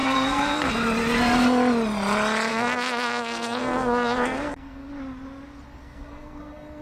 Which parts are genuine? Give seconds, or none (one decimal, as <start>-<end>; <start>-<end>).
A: 0.7-2.5; 4.9-5.7